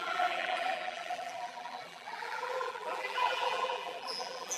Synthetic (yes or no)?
yes